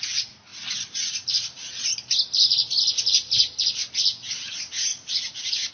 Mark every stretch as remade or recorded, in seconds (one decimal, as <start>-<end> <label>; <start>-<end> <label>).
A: 0.0-4.9 recorded; 4.9-5.7 remade